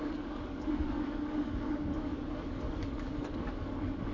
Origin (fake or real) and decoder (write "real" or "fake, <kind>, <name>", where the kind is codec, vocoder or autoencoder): fake, codec, DAC